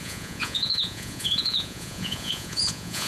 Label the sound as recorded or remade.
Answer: remade